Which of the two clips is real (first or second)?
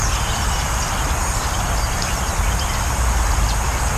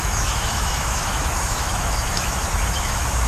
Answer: first